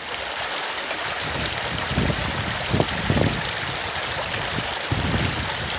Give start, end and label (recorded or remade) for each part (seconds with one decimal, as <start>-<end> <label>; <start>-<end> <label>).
0.0-5.8 recorded